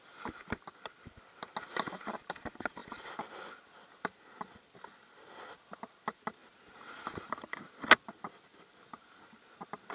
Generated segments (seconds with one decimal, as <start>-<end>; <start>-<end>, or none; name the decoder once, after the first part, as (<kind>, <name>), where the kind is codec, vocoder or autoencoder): 6.4-7.6 (vocoder, BigVGAN v2)